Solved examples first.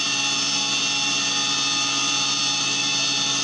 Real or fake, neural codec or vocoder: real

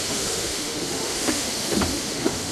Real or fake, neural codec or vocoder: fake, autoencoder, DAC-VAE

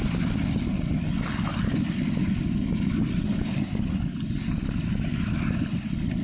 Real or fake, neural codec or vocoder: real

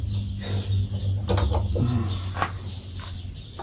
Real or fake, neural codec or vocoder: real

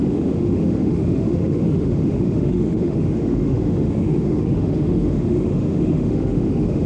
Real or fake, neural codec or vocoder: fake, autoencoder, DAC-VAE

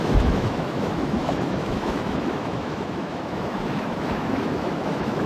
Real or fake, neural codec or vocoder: fake, autoencoder, DAC-VAE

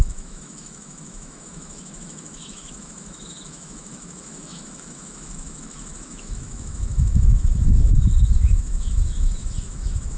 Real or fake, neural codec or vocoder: fake, autoencoder, DAC-VAE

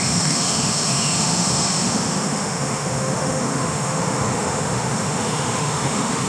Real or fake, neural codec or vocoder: fake, autoencoder, DAC-VAE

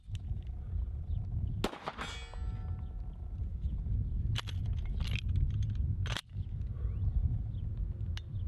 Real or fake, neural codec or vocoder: real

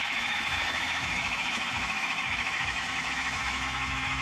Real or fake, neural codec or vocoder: fake, autoencoder, DAC-VAE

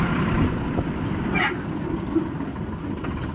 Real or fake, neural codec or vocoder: real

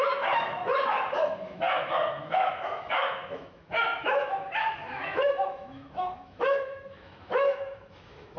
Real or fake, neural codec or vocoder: fake, autoencoder, DAC-VAE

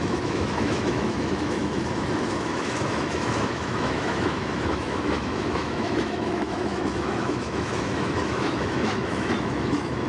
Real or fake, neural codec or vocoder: fake, autoencoder, DAC-VAE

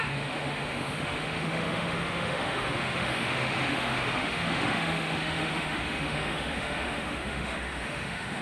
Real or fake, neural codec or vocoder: fake, autoencoder, DAC-VAE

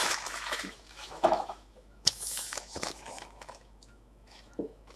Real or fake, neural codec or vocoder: fake, autoencoder, DAC-VAE